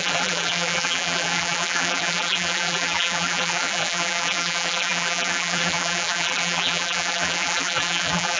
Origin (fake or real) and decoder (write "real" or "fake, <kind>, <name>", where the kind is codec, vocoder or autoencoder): fake, vocoder, BigVGAN v2